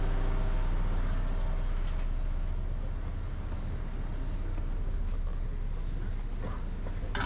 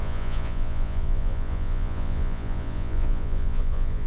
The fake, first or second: second